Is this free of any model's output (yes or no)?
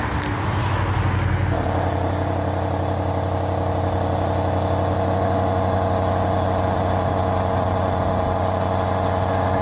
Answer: yes